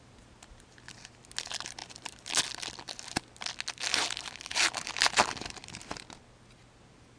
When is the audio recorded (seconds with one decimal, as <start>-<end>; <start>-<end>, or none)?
0.0-7.2